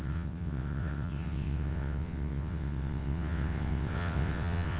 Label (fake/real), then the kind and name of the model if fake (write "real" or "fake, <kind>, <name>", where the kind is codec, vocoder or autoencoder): fake, vocoder, WaveNeXt